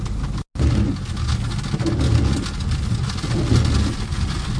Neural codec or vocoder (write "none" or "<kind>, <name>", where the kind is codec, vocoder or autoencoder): none